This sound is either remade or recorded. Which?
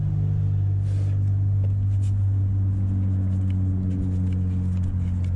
recorded